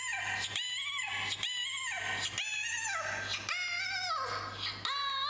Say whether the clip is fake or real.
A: real